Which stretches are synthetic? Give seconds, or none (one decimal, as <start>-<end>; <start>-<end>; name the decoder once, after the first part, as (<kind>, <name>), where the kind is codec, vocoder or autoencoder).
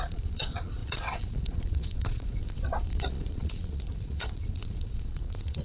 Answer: 0.0-5.6 (vocoder, Vocos)